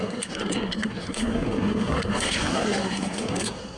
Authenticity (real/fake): fake